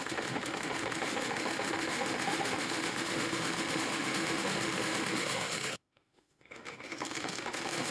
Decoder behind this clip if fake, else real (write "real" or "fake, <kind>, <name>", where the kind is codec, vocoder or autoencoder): fake, autoencoder, DAC-VAE